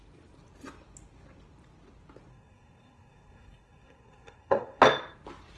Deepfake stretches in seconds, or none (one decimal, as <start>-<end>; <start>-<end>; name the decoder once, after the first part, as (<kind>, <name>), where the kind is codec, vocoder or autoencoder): 2.3-4.8 (codec, SNAC)